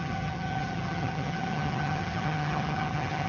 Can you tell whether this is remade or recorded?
remade